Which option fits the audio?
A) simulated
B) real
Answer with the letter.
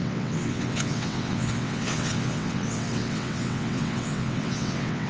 A